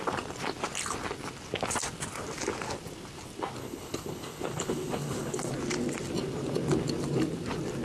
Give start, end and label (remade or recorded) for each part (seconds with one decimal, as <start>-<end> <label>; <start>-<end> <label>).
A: 0.0-3.6 recorded; 3.6-5.5 remade; 5.5-7.8 recorded